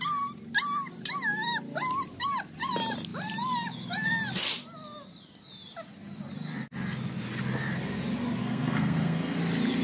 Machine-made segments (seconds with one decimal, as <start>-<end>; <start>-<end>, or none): 8.4-9.4